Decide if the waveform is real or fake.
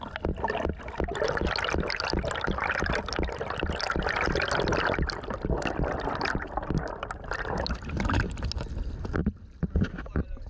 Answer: real